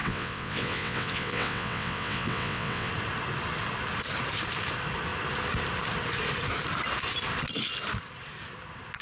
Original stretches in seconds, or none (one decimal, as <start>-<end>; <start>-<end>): 2.9-9.0